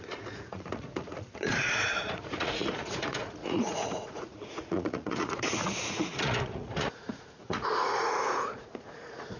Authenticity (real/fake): fake